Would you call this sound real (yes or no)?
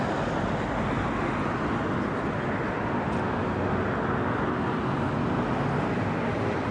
yes